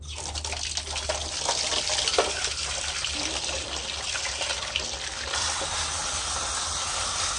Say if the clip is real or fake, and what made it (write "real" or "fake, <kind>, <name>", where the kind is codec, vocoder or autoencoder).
real